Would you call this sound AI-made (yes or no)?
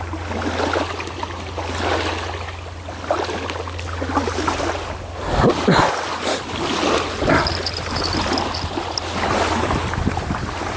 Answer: no